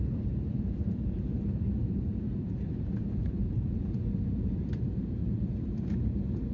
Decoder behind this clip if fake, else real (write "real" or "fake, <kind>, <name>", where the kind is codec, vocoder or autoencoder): fake, vocoder, BigVGAN v2